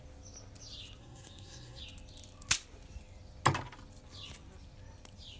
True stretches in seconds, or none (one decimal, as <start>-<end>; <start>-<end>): 0.0-1.0; 1.8-5.4